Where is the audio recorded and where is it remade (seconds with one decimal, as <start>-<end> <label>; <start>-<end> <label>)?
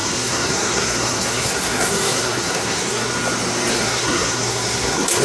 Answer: 0.0-3.1 remade; 3.1-3.7 recorded; 3.7-5.2 remade